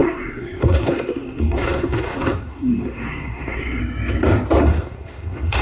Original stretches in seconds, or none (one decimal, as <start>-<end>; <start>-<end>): 3.8-4.6